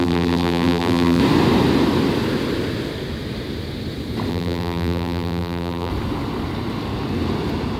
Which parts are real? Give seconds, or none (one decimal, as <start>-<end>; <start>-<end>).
1.2-4.3; 5.9-7.8

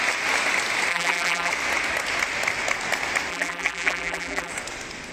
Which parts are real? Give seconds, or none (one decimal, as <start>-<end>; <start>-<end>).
0.0-0.9; 1.5-3.3; 4.5-5.1

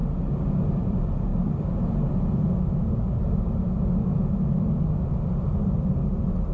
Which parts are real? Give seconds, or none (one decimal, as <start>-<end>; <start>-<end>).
0.0-6.5

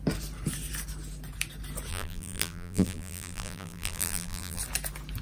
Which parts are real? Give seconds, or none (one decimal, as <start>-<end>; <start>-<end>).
0.0-1.9; 4.6-5.2

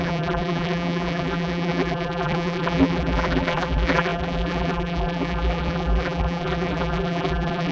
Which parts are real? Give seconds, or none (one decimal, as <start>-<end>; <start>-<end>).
none

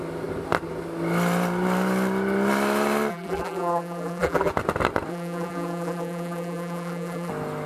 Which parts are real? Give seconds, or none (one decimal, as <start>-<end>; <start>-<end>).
0.0-3.1; 4.5-5.1; 7.3-7.7

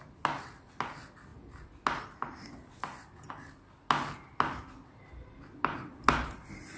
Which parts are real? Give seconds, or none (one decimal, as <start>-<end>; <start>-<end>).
0.0-6.8

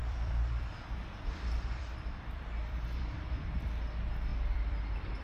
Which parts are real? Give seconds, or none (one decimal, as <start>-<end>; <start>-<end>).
3.1-4.3